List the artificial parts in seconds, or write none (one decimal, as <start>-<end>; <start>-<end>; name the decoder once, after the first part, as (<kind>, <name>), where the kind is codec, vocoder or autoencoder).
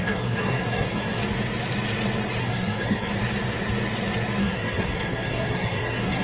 0.0-1.2 (codec, SNAC); 2.4-3.1; 4.4-6.2